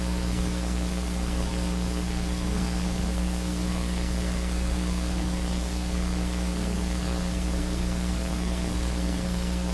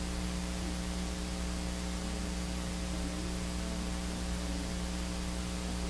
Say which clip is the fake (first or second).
first